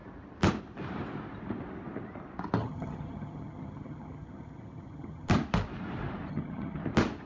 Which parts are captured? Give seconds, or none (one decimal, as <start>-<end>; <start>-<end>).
0.0-2.6; 5.3-6.3; 6.8-7.3